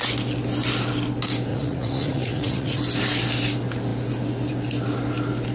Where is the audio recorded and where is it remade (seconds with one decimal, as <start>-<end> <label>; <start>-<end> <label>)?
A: 0.0-1.5 recorded; 1.5-2.8 remade; 2.8-5.5 recorded